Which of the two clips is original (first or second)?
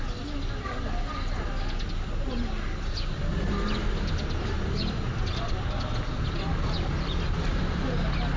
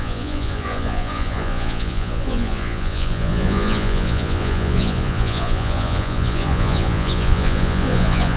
first